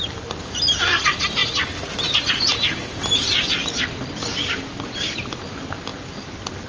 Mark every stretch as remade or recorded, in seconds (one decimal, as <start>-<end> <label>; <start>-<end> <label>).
0.0-6.7 recorded